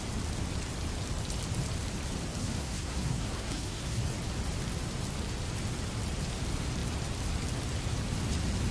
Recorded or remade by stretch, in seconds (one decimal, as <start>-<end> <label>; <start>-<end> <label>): 0.0-2.4 recorded; 2.4-4.0 remade; 4.0-8.7 recorded

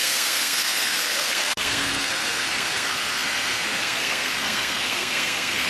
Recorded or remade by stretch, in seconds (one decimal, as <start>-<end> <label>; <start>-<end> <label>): 0.0-5.7 remade